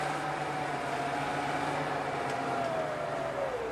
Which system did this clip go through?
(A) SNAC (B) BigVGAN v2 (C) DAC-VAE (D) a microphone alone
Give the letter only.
D